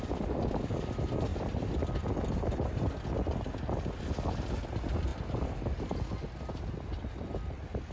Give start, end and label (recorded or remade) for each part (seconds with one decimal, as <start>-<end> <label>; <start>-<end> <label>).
0.0-7.9 recorded

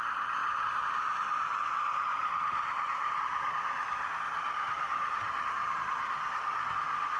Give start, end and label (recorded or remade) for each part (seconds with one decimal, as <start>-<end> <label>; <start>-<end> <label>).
0.0-0.4 recorded; 0.4-0.9 remade; 0.9-2.1 recorded; 2.1-5.5 remade; 5.5-7.2 recorded

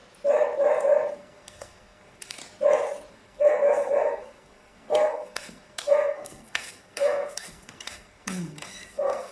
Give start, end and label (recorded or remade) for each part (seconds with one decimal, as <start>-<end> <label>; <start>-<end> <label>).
0.0-1.1 recorded; 1.1-2.4 remade; 2.4-3.1 recorded; 3.1-9.3 remade

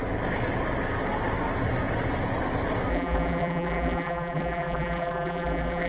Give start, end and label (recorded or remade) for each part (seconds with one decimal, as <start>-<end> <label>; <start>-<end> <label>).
0.0-2.9 recorded; 2.9-5.9 remade

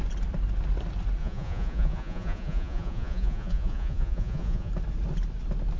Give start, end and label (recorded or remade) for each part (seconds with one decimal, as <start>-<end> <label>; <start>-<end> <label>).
0.0-1.2 recorded; 1.2-4.7 remade; 4.7-5.8 recorded

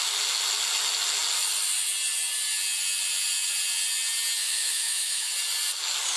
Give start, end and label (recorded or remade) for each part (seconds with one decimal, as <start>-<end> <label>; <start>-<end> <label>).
0.0-4.4 recorded; 4.4-5.3 remade; 5.3-6.2 recorded

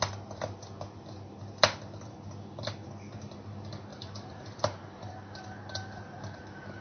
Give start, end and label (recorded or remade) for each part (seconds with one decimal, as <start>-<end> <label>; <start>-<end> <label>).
0.0-3.9 recorded; 3.9-5.1 remade; 5.1-6.8 recorded

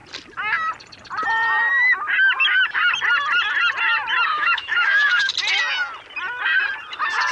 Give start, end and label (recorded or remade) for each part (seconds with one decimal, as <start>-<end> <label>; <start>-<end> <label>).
0.0-4.3 recorded; 4.3-5.3 remade; 5.3-7.3 recorded